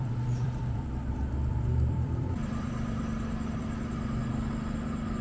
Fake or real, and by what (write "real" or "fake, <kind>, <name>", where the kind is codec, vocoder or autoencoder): fake, vocoder, BigVGAN v2